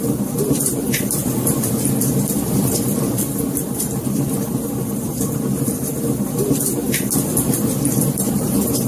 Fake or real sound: fake